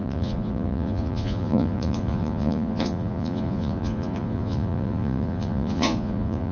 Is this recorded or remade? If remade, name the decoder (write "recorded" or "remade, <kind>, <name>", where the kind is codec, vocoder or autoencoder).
remade, vocoder, Vocos